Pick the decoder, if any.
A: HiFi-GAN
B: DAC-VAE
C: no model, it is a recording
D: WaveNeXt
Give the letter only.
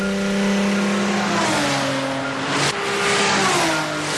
C